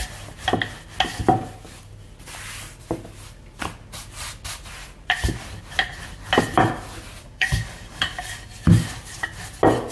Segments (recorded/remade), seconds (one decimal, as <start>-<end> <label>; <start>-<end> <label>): 0.0-7.2 recorded; 7.2-8.5 remade; 8.5-9.9 recorded